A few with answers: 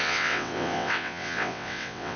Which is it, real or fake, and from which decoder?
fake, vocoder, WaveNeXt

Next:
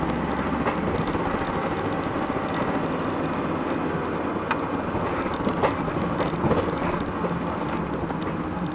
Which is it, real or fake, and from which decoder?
real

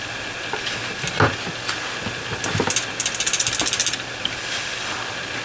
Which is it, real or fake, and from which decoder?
real